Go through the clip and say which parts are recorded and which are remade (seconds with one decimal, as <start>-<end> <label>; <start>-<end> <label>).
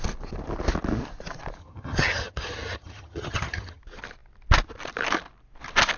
0.0-1.6 recorded; 1.6-3.8 remade; 3.8-6.0 recorded